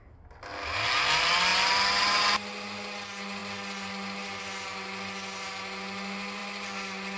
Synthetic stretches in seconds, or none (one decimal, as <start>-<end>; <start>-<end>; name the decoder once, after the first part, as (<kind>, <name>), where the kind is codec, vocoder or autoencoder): none